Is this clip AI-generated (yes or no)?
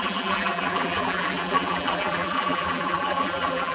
yes